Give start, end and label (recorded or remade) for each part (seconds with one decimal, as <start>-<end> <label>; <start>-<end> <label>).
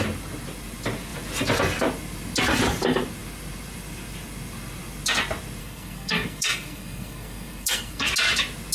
0.0-5.6 recorded; 5.6-8.1 remade; 8.1-8.7 recorded